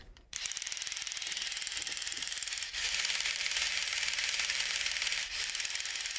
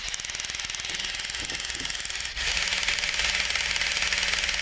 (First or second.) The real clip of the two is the second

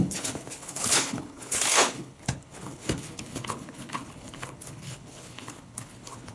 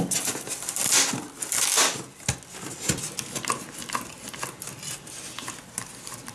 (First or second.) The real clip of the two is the second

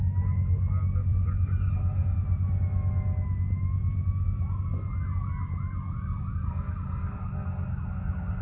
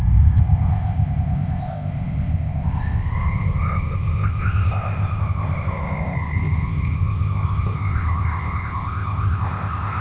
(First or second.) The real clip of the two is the first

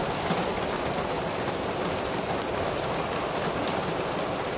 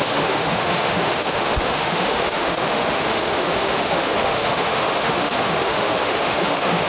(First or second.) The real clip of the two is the first